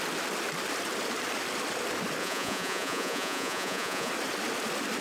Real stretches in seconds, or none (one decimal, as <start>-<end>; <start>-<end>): 0.0-2.2; 4.1-5.0